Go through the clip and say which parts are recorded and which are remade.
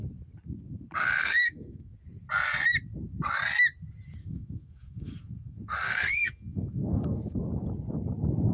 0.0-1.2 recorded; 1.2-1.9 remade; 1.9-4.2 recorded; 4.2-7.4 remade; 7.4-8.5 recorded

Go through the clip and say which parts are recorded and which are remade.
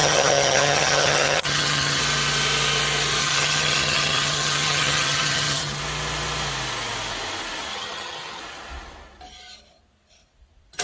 0.0-2.0 remade; 2.0-3.2 recorded; 3.2-5.8 remade; 5.8-7.7 recorded; 7.7-8.4 remade; 8.4-10.8 recorded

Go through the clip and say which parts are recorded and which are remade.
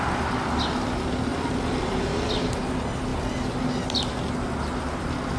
0.0-5.4 recorded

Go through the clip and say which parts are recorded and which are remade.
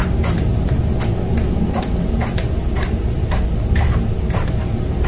0.0-5.1 recorded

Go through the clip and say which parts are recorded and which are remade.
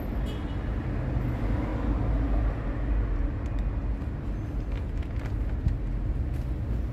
0.0-6.9 recorded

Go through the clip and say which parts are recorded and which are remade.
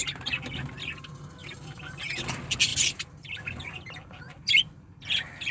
0.0-1.4 recorded; 1.4-2.0 remade; 2.0-2.7 recorded; 2.7-5.5 remade